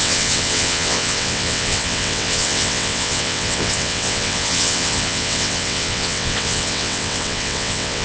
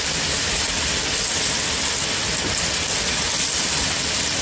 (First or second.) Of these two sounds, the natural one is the second